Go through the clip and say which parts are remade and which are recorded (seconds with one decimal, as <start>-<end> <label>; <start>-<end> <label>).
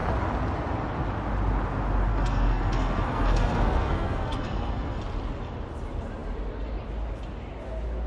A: 0.0-2.1 recorded; 2.1-5.0 remade; 5.0-8.1 recorded